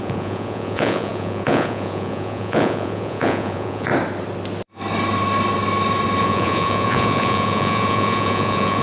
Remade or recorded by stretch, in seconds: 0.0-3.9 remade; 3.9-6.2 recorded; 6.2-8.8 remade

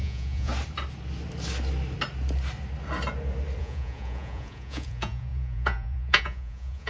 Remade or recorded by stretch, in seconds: 0.0-0.5 remade; 0.5-3.6 recorded; 3.6-6.9 remade

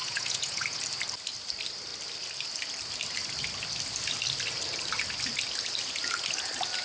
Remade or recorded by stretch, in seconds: 0.0-0.8 remade; 0.8-6.8 recorded

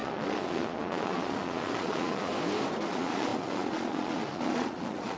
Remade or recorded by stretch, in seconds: 0.0-2.3 remade; 2.3-2.9 recorded; 2.9-5.2 remade

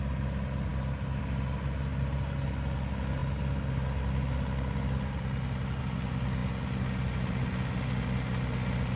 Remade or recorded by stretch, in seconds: 0.0-9.0 recorded